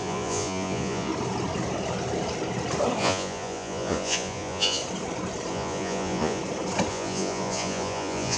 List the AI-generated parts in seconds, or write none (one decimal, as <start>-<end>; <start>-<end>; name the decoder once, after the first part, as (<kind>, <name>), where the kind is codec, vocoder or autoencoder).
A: 0.0-1.1 (vocoder, Vocos); 3.0-4.8; 5.5-6.4; 6.9-8.4